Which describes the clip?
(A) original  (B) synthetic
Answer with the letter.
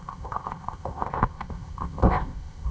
B